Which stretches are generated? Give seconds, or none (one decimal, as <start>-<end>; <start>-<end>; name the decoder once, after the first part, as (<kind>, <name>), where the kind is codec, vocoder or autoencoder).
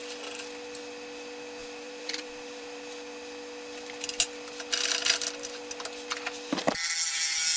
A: 1.6-2.8 (vocoder, BigVGAN v2)